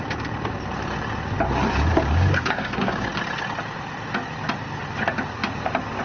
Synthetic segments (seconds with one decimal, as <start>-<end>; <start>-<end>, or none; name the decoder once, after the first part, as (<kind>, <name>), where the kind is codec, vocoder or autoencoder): 1.9-3.1 (codec, DAC)